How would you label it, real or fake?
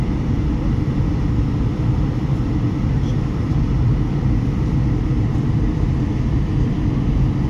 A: real